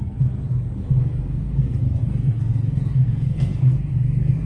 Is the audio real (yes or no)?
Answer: no